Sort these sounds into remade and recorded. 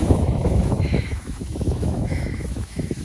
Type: remade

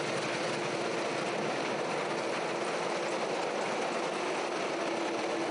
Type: recorded